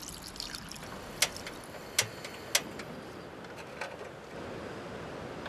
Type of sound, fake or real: real